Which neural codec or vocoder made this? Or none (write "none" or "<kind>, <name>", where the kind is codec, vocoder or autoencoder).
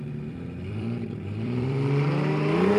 vocoder, BigVGAN v2